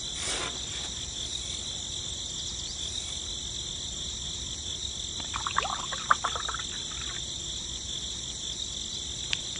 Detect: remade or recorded recorded